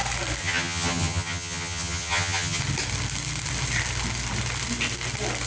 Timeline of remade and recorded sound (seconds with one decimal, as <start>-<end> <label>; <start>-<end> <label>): 0.0-0.4 recorded; 0.4-2.6 remade; 2.6-5.5 recorded